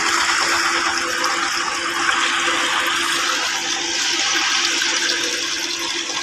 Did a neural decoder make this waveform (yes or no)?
no